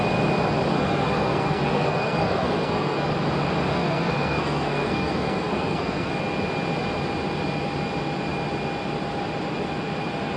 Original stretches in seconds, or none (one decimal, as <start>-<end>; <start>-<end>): 0.0-0.7; 3.1-3.7; 6.1-10.4